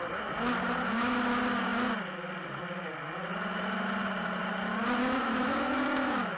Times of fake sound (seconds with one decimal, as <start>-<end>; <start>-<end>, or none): 5.0-6.4